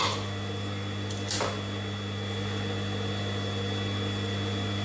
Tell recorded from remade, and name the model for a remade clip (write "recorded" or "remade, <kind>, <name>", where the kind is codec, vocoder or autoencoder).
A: recorded